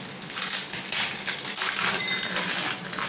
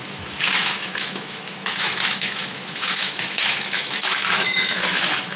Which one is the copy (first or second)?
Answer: second